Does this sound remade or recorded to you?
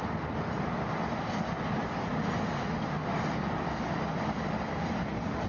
recorded